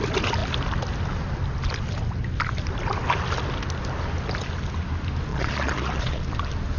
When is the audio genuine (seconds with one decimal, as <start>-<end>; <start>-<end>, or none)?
0.0-5.3; 6.2-6.8

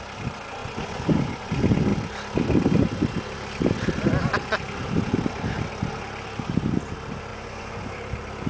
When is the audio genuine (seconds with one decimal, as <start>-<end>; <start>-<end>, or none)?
0.0-0.6; 1.5-7.3; 7.8-8.5

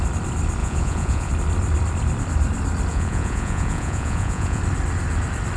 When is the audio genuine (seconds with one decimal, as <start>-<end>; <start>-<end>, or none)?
0.0-0.6; 1.3-2.9; 4.6-5.6